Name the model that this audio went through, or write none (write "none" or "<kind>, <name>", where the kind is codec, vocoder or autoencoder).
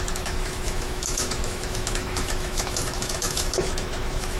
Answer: autoencoder, DAC-VAE